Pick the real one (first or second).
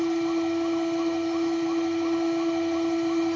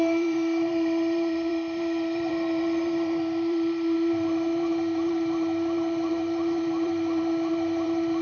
first